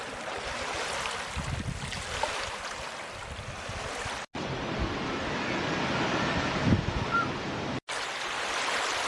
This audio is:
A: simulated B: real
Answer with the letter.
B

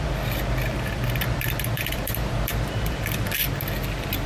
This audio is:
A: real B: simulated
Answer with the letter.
B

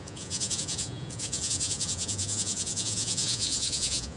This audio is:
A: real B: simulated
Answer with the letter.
B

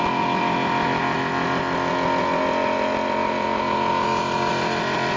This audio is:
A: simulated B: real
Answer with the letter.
B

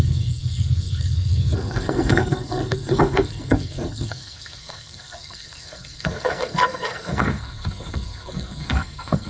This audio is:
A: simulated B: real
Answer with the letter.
A